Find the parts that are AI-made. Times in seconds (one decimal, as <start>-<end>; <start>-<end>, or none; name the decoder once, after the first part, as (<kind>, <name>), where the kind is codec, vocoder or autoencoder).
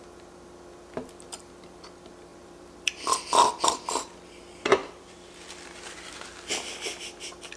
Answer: 2.3-3.6 (vocoder, BigVGAN v2); 4.8-5.7